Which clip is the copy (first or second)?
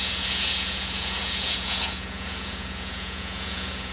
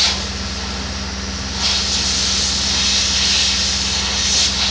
first